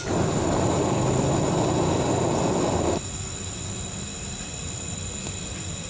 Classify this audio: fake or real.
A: real